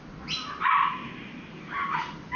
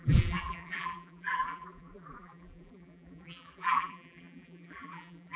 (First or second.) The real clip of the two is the first